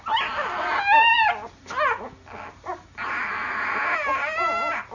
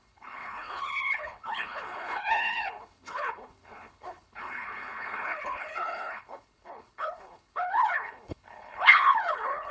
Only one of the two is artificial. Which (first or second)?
second